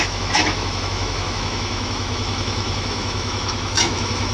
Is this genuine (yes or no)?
no